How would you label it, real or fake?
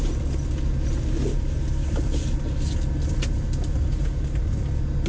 real